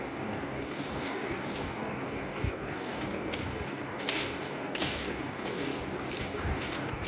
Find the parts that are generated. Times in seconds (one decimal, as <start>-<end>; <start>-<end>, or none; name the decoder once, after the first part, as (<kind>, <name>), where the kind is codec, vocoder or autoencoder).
0.0-5.7 (codec, DAC); 6.2-7.1